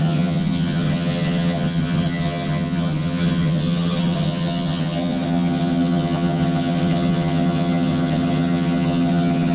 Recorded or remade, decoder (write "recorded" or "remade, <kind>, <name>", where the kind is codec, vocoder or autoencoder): remade, vocoder, HiFi-GAN